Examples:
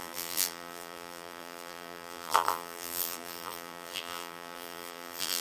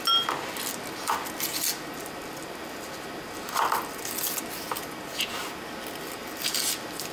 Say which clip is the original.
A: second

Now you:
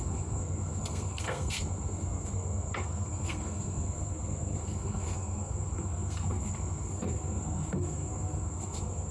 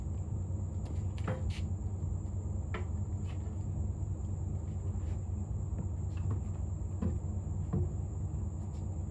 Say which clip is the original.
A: second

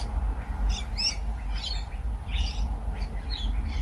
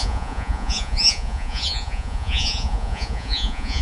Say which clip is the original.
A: first